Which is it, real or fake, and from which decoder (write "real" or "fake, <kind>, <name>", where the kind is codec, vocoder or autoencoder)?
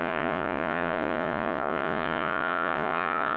fake, vocoder, Vocos